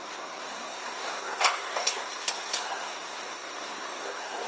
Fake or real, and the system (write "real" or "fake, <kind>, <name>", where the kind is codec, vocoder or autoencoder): fake, codec, SNAC